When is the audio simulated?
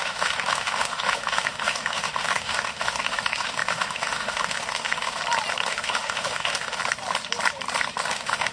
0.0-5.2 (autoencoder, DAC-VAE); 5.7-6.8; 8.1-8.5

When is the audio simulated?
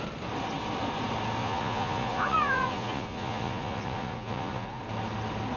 1.4-4.8 (vocoder, Vocos)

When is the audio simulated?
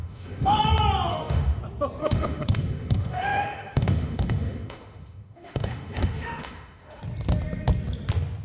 0.0-0.6 (autoencoder, DAC-VAE); 1.1-1.6; 2.0-7.0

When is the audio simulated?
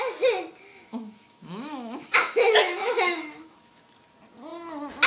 0.7-3.8 (autoencoder, DAC-VAE)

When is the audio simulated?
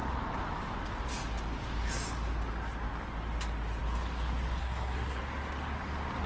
4.6-5.2 (codec, SNAC)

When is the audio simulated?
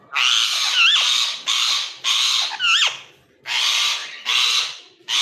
none